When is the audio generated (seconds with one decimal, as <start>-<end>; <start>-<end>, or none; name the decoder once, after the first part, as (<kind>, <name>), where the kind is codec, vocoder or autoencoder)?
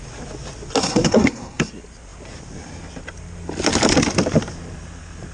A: 0.8-1.7 (codec, SNAC)